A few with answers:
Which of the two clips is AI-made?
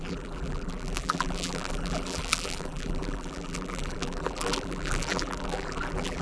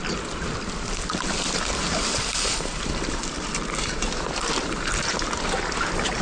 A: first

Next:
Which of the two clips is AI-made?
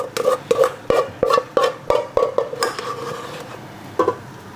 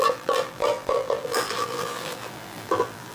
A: second